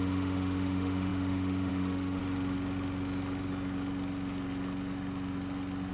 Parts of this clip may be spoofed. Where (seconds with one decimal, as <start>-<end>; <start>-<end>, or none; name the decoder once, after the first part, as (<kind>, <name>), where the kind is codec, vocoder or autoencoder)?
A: 0.0-2.2 (autoencoder, DAC-VAE)